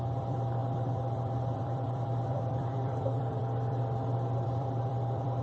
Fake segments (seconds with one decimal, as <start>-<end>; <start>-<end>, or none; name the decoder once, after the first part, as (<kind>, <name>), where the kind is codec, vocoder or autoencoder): 0.0-5.4 (vocoder, BigVGAN v2)